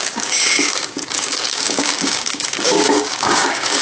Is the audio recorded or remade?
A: remade